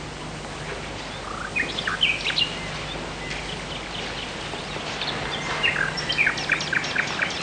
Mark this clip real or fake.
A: real